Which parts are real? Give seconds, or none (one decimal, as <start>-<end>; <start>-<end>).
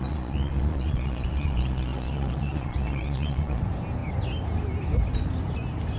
3.6-6.0